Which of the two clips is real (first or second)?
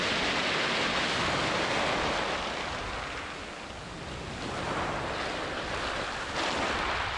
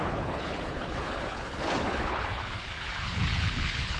first